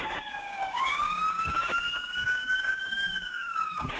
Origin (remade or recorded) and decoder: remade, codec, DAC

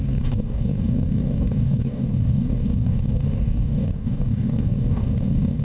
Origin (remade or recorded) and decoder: remade, codec, DAC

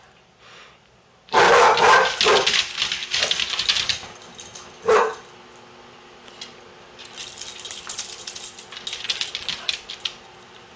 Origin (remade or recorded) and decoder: recorded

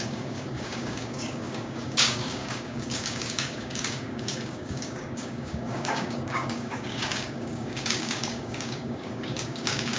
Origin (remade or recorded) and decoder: remade, codec, DAC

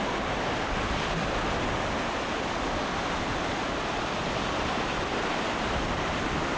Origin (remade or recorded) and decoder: recorded